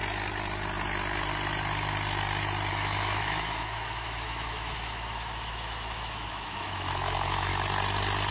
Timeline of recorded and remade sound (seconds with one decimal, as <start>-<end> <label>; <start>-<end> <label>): 0.0-2.7 recorded; 2.7-7.5 remade; 7.5-8.3 recorded